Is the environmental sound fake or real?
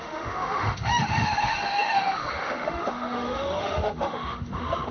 fake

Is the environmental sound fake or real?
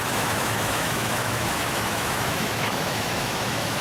fake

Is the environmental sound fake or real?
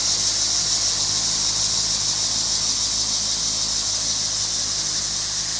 real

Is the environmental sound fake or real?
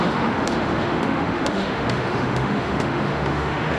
fake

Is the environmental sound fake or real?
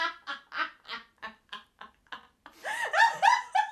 real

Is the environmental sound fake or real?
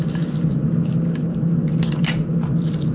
real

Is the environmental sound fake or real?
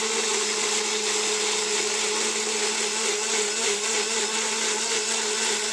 real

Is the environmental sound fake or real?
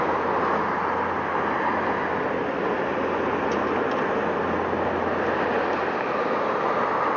real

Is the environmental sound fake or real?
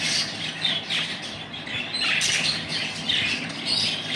real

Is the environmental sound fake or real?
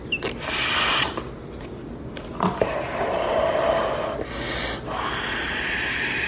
real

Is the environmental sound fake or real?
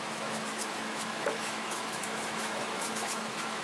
fake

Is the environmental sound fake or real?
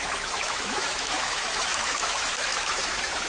fake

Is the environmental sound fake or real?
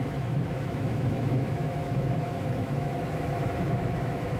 fake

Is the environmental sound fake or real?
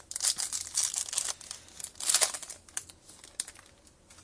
real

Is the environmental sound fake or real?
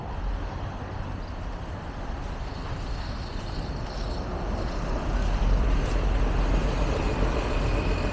real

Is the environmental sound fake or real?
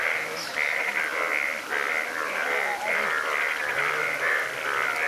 real